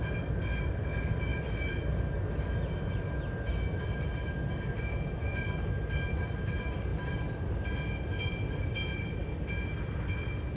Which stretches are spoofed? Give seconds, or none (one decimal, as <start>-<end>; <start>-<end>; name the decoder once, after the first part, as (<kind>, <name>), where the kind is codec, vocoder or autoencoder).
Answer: none